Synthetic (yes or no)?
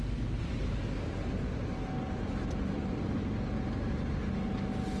no